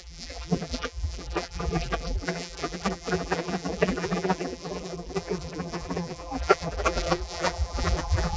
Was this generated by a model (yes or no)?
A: yes